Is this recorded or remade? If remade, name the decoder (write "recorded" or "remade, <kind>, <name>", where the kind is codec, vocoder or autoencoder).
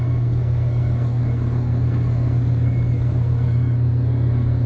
remade, codec, SNAC